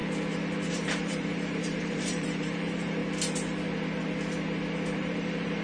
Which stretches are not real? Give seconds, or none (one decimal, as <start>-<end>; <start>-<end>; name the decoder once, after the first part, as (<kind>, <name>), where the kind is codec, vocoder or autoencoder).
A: 0.7-3.0 (vocoder, BigVGAN v2); 5.0-5.6